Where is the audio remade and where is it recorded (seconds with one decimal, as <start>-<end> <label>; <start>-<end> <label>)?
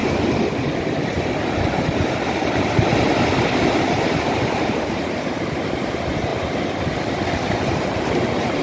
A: 0.0-4.2 recorded; 4.2-6.3 remade; 6.3-7.6 recorded; 7.6-8.6 remade